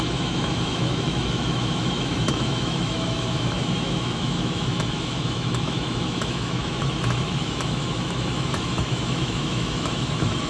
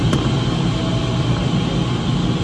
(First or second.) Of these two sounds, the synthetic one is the first